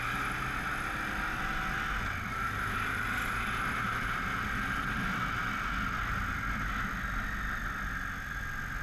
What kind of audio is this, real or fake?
real